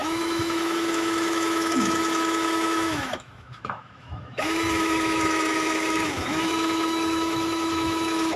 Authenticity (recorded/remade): remade